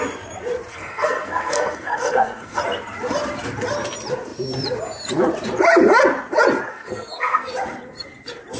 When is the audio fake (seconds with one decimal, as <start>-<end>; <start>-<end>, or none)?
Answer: 0.7-2.6; 6.7-7.5